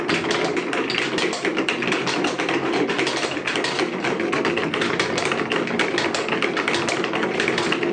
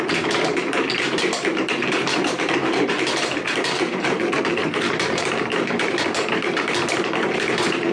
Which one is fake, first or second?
second